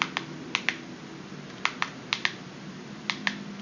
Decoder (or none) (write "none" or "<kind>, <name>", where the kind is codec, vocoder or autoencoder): none